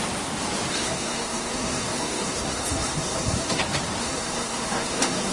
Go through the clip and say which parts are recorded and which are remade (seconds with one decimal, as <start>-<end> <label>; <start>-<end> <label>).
0.0-0.7 recorded; 0.7-3.6 remade; 3.6-4.0 recorded; 4.0-5.3 remade